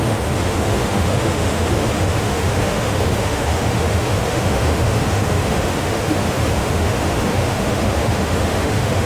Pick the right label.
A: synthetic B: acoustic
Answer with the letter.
A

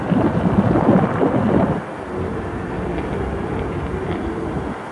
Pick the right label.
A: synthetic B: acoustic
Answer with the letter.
B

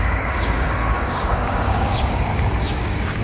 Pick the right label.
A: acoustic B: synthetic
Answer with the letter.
B